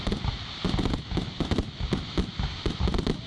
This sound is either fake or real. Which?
real